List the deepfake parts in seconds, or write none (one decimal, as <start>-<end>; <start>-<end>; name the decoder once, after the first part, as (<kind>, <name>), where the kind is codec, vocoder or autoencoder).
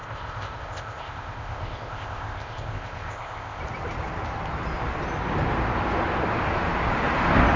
0.0-3.6 (codec, ZipCodec)